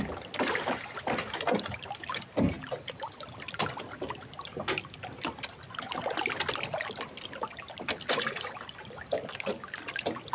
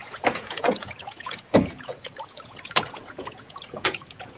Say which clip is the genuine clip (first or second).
first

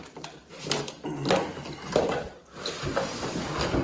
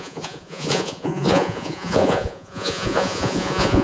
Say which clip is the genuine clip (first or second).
first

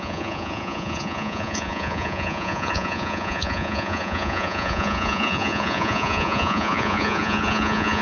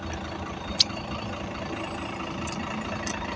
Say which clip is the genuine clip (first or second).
second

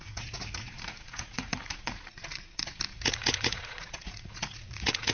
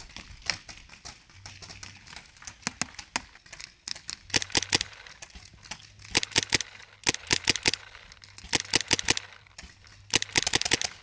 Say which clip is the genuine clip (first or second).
second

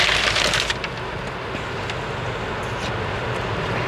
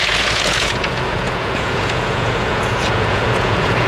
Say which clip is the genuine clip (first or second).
first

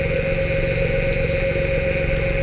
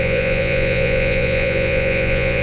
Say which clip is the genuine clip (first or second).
first